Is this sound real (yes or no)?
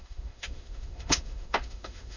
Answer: no